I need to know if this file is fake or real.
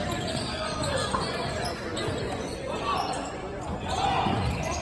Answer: fake